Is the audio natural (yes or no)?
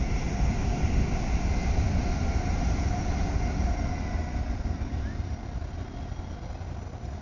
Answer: yes